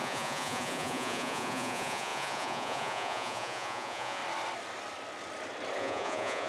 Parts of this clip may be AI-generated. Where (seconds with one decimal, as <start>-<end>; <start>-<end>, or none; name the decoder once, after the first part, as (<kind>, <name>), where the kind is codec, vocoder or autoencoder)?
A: 0.0-4.2 (vocoder, Vocos); 5.8-6.5